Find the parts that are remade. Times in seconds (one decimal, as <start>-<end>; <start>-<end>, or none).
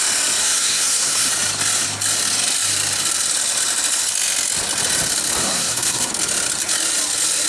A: 0.4-1.3; 5.4-6.1